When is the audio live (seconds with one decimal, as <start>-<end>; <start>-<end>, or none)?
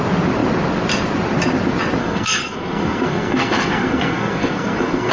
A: 0.0-2.0